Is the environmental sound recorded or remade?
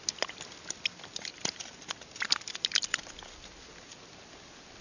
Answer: recorded